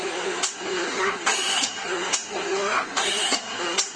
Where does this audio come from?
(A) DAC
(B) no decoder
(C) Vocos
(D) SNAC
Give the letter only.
D